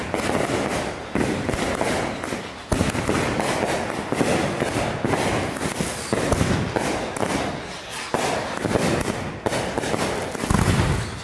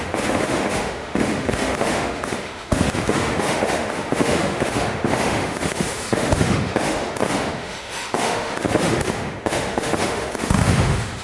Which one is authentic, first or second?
first